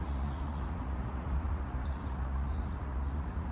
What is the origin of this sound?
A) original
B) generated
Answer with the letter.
B